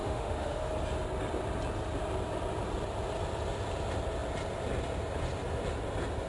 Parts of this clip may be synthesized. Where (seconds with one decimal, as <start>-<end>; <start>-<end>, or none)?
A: 0.0-0.7